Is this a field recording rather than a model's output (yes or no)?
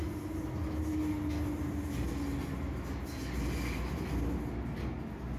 yes